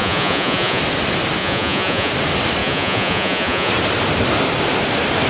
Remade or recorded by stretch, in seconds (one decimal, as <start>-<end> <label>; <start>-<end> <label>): 0.0-0.8 remade; 0.8-1.4 recorded; 1.4-2.1 remade; 2.1-2.6 recorded; 2.6-3.7 remade; 3.7-5.3 recorded